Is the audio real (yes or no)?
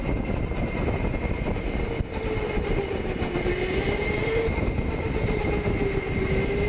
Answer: yes